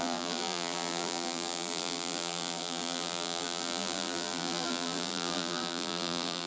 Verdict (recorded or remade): remade